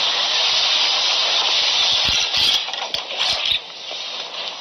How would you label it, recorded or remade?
recorded